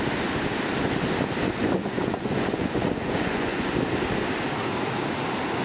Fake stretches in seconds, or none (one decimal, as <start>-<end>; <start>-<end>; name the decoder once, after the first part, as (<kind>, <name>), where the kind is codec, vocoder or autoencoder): 1.6-3.7 (vocoder, Vocos)